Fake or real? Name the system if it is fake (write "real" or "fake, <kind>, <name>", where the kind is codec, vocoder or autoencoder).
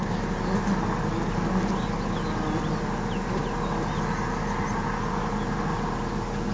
real